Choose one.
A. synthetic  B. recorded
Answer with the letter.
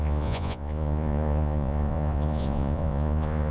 A